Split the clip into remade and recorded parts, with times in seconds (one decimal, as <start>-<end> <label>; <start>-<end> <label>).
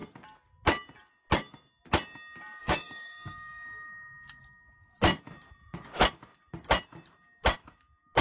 0.0-2.6 recorded; 2.6-4.4 remade; 4.4-8.2 recorded